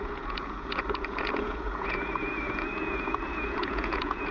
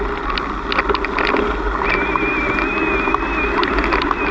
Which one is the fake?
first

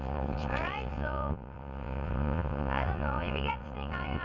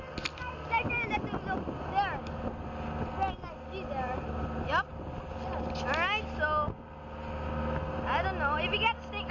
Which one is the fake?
first